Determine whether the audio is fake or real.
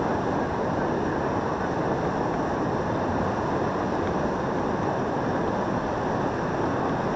real